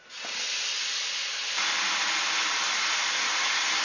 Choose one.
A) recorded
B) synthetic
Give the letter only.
A